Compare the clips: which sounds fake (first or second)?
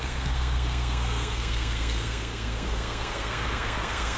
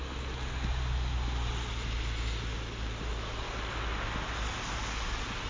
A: first